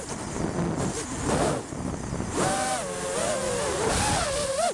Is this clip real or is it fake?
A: real